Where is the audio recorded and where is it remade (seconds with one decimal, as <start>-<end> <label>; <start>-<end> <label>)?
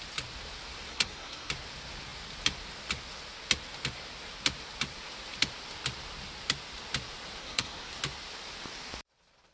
0.0-0.9 recorded; 0.9-1.5 remade; 1.5-7.4 recorded; 7.4-7.9 remade; 7.9-9.5 recorded